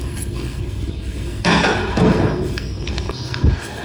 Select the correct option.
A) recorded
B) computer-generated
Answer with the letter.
B